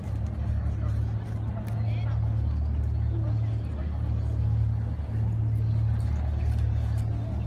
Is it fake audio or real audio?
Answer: real